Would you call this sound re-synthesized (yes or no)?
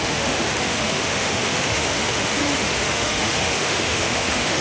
yes